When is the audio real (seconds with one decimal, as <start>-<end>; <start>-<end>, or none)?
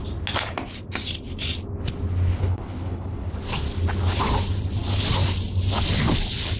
0.0-2.4; 3.3-6.6